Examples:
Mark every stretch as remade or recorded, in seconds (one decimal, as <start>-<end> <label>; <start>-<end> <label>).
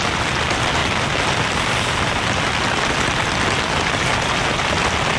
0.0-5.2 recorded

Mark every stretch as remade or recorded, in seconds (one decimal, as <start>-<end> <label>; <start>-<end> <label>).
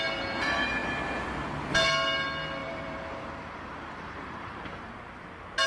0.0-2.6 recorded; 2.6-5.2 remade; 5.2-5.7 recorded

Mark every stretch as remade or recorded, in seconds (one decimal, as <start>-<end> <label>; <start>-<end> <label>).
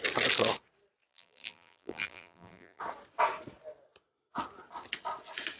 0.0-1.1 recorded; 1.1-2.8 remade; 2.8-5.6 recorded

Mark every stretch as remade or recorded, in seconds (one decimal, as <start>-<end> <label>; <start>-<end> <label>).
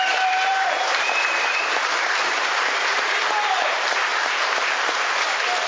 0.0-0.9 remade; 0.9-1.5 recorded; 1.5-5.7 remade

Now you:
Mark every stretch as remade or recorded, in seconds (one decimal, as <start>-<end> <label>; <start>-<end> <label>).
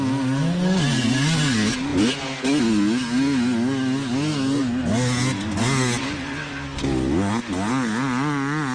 0.0-8.7 recorded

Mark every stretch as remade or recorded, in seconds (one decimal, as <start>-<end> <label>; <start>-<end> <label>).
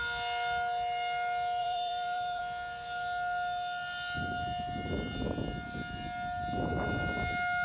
0.0-1.6 recorded; 1.6-2.4 remade; 2.4-7.6 recorded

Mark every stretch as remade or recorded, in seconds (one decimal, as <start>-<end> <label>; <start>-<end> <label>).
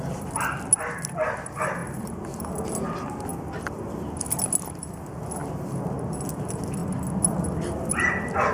0.0-1.8 recorded; 1.8-2.4 remade; 2.4-8.5 recorded